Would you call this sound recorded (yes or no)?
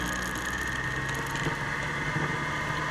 yes